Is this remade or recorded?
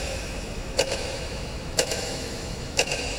remade